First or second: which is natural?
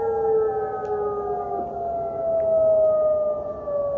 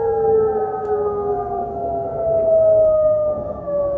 first